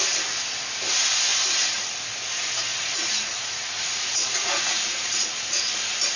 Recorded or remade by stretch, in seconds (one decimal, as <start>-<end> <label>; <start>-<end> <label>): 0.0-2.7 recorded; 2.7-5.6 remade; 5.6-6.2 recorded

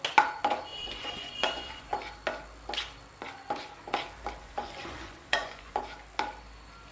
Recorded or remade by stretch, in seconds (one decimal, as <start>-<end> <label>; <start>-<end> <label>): 0.0-0.7 recorded; 0.7-1.9 remade; 1.9-4.4 recorded; 4.4-5.8 remade; 5.8-6.9 recorded

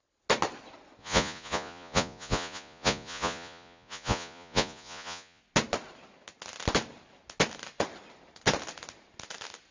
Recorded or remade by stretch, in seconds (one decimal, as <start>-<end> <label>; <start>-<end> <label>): 0.0-1.0 recorded; 1.0-5.4 remade; 5.4-9.7 recorded

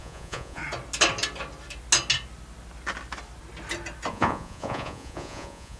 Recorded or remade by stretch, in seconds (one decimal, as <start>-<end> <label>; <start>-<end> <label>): 0.0-0.6 remade; 0.6-4.1 recorded; 4.1-5.8 remade

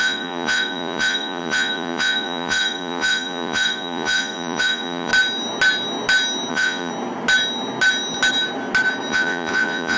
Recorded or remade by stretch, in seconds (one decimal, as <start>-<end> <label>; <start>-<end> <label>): 0.0-5.1 remade; 5.1-6.5 recorded; 6.5-6.9 remade; 6.9-9.1 recorded; 9.1-10.0 remade

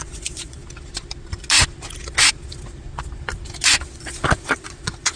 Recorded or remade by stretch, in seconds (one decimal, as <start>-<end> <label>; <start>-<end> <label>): 0.0-0.6 remade; 0.6-3.7 recorded; 3.7-5.2 remade

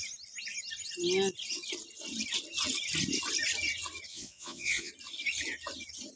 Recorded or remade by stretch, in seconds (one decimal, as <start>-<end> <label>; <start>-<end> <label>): 0.0-4.1 recorded; 4.1-4.9 remade; 4.9-6.2 recorded